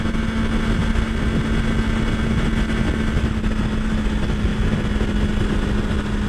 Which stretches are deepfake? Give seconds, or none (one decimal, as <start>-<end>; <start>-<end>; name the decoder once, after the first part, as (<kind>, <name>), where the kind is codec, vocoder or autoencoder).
none